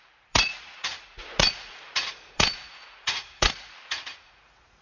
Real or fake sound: fake